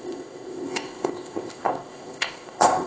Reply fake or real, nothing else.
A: fake